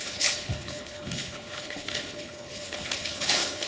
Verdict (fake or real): fake